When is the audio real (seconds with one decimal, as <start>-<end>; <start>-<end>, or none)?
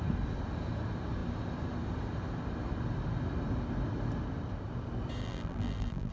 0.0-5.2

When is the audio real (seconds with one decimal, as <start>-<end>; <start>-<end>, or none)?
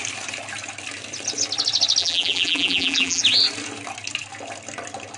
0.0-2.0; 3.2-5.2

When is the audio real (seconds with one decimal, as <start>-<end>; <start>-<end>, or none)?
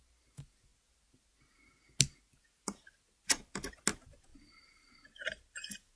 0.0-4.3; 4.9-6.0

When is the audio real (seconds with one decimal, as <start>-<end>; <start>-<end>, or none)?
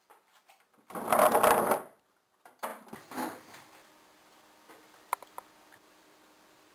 0.0-6.7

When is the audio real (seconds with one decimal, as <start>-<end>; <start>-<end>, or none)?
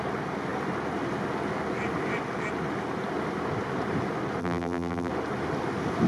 0.0-4.4; 5.1-6.1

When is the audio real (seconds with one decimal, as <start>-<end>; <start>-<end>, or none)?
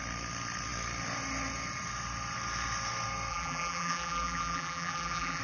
0.0-3.3